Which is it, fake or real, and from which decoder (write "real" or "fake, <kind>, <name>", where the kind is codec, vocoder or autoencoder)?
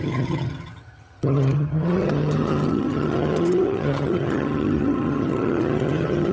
fake, vocoder, HiFi-GAN